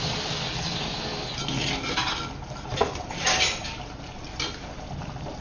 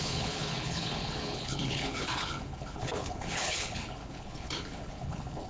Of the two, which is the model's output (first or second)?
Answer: second